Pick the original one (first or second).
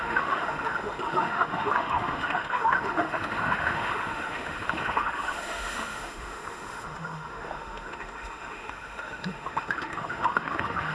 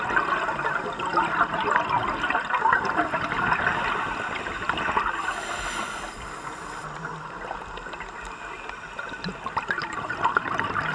second